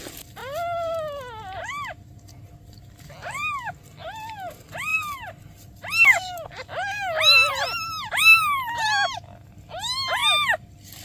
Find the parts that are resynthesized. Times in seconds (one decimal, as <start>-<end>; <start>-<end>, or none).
none